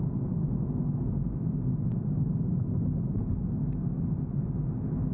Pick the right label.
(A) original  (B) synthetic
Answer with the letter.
A